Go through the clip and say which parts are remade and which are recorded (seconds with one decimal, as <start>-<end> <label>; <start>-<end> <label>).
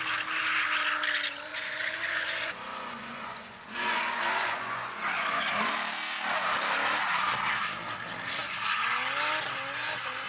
0.0-1.5 recorded; 1.5-5.5 remade; 5.5-10.3 recorded